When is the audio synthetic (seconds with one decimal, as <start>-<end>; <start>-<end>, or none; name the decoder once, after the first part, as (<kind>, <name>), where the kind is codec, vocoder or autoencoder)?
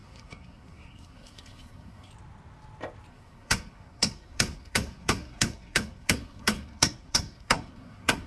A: 0.0-2.1 (codec, SNAC); 3.1-8.3